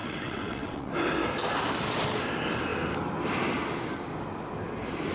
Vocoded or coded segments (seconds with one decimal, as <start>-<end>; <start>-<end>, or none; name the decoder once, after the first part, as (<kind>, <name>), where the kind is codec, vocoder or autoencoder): 0.0-0.9 (vocoder, WaveNeXt)